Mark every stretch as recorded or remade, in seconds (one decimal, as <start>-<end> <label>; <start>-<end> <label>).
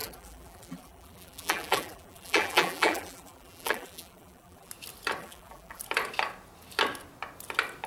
0.0-4.7 remade; 4.7-5.2 recorded; 5.2-5.8 remade; 5.8-7.9 recorded